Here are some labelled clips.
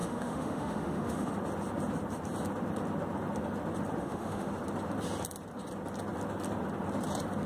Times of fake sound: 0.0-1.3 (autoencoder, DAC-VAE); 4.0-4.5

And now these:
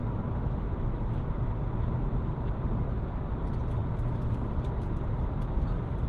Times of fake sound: none

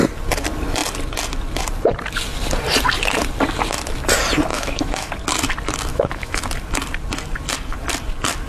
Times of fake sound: 4.5-5.1 (autoencoder, DAC-VAE); 5.9-6.4